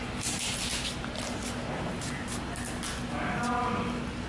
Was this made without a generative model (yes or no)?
yes